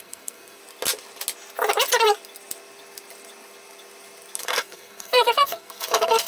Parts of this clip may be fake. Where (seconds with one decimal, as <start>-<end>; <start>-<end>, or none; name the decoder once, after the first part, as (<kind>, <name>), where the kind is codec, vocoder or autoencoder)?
0.0-0.6 (codec, SNAC); 4.4-6.3